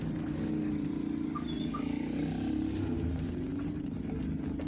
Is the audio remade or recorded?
recorded